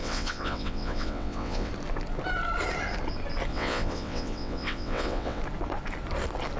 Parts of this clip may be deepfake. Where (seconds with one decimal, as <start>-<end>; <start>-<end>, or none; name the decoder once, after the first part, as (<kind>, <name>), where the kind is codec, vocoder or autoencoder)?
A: 0.0-1.7 (vocoder, WaveNeXt); 3.5-5.4